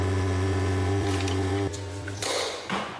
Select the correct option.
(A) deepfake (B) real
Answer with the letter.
A